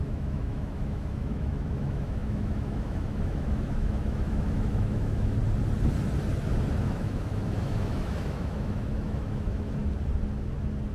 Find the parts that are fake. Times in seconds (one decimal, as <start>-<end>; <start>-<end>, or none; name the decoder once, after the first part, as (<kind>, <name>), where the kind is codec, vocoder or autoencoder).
0.0-5.4 (autoencoder, DAC-VAE); 6.8-9.8